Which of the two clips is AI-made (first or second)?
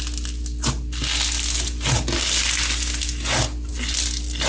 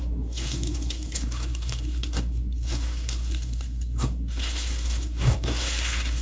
second